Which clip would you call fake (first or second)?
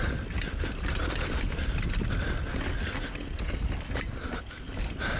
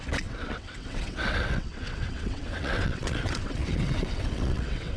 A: second